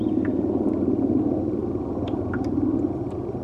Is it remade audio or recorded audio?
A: recorded